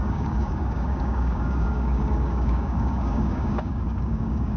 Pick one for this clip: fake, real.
fake